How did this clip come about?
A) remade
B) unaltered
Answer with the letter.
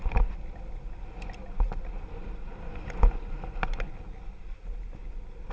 B